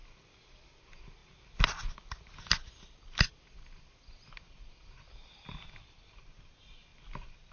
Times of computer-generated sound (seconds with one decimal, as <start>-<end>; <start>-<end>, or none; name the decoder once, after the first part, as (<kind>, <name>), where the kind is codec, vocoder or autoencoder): none